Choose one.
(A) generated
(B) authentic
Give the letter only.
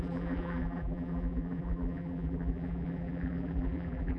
A